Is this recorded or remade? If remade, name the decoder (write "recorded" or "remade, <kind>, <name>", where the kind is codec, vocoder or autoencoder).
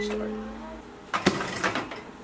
recorded